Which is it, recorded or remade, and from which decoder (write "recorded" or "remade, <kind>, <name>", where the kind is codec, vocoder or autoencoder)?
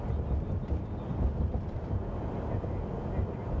recorded